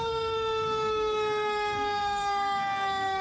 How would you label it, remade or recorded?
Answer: remade